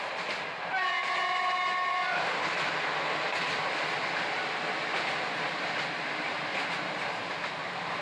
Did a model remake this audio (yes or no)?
no